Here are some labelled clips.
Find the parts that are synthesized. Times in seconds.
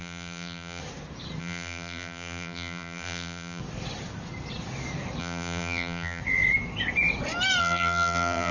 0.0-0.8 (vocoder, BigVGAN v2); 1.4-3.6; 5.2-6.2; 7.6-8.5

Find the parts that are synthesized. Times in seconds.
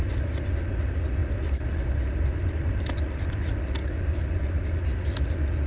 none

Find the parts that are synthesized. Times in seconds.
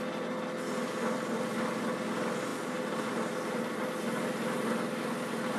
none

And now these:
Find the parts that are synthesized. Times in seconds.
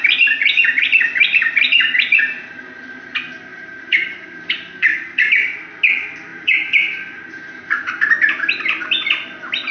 1.2-2.6 (vocoder, BigVGAN v2); 3.5-5.3; 6.3-8.1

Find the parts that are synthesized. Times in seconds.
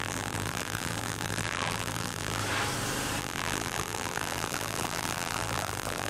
0.0-2.4 (vocoder, BigVGAN v2); 3.2-6.1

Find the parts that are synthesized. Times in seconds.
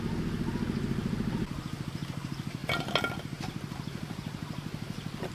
none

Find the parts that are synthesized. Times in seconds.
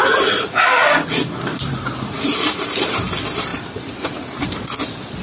1.5-3.0 (vocoder, BigVGAN v2); 3.5-4.1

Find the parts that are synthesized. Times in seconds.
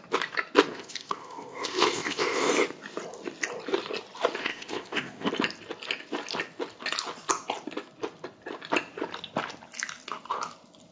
0.7-2.5 (codec, ZipCodec); 4.4-5.3